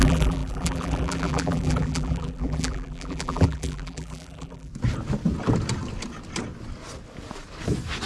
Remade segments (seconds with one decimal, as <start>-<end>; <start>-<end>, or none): 0.0-4.7